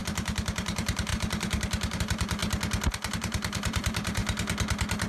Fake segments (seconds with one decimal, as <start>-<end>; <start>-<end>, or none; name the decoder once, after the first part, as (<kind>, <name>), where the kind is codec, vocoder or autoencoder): 0.0-2.4 (vocoder, BigVGAN v2); 3.1-4.2